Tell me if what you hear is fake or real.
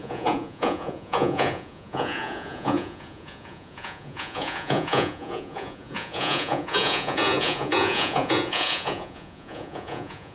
fake